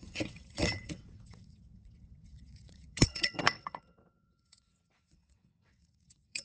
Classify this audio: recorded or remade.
remade